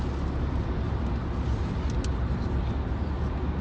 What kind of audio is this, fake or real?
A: real